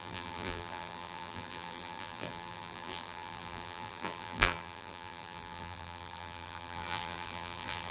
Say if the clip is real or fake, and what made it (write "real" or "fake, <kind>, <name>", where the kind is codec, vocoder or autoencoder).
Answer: fake, vocoder, BigVGAN v2